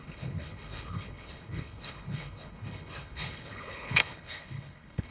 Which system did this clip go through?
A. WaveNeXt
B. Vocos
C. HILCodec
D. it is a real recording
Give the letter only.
C